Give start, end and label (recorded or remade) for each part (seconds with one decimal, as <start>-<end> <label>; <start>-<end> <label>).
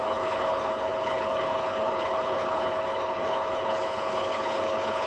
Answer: 0.0-5.1 remade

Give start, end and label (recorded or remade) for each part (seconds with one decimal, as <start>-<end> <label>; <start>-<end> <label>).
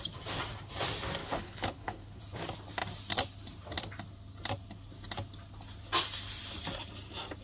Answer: 0.0-1.2 recorded; 1.2-2.2 remade; 2.2-7.4 recorded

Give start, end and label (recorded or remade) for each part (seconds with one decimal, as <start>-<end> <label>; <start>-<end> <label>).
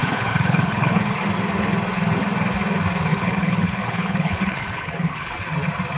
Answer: 0.0-1.0 remade; 1.0-3.1 recorded; 3.1-5.3 remade; 5.3-6.0 recorded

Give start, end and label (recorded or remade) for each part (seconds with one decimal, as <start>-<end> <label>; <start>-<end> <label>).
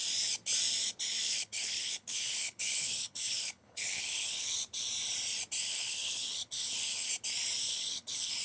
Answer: 0.0-1.2 recorded; 1.2-4.6 remade; 4.6-5.7 recorded; 5.7-7.1 remade; 7.1-7.7 recorded; 7.7-8.4 remade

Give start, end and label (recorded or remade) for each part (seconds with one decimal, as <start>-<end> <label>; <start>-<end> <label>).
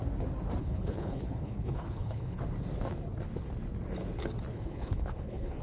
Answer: 0.0-0.6 recorded; 0.6-2.4 remade; 2.4-4.5 recorded; 4.5-5.6 remade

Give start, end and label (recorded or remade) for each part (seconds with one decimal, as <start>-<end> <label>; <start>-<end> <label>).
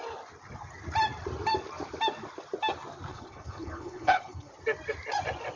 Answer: 0.0-3.1 recorded; 3.1-4.5 remade; 4.5-5.6 recorded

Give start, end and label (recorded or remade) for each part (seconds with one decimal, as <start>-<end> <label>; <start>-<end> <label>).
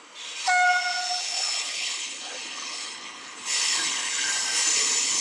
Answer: 0.0-1.2 recorded; 1.2-4.3 remade; 4.3-4.7 recorded; 4.7-5.2 remade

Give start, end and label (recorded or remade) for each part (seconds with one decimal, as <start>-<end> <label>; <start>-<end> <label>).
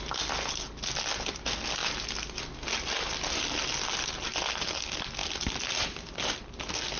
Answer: 0.0-7.0 recorded